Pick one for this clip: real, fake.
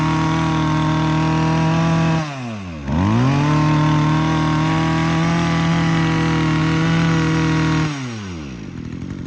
real